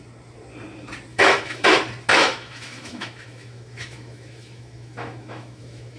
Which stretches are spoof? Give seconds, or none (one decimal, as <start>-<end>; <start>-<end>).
1.1-1.7; 2.1-6.0